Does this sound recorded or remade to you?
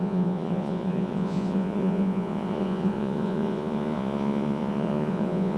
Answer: remade